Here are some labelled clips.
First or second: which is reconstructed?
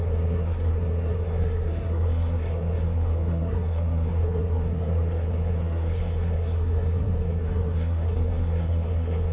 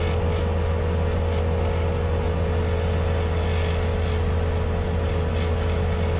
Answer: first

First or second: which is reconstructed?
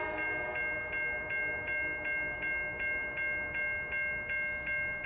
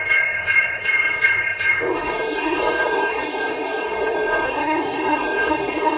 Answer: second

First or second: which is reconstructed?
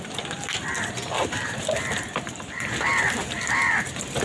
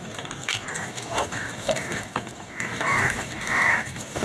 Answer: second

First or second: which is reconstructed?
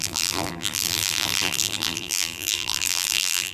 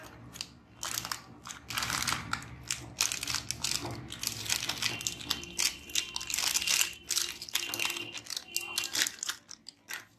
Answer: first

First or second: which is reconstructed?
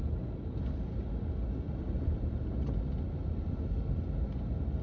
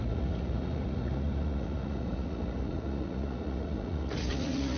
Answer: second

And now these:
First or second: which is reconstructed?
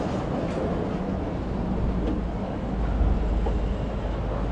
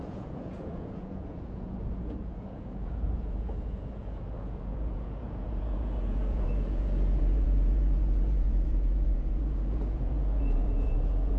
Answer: second